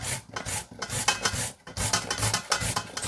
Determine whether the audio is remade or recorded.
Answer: recorded